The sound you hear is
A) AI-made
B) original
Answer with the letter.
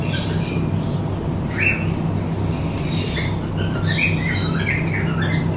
B